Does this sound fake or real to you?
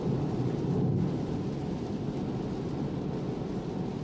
real